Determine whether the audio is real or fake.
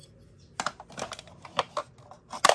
real